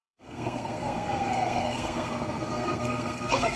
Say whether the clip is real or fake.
fake